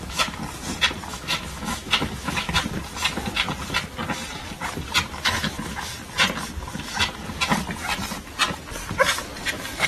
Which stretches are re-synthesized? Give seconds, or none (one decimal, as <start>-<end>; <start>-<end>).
0.0-0.4; 1.1-2.6; 5.2-5.9; 9.5-9.9